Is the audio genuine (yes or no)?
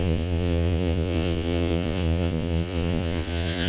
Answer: no